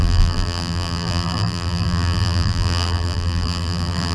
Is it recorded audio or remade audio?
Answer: remade